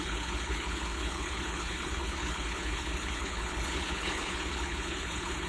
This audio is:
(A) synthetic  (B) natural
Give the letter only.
A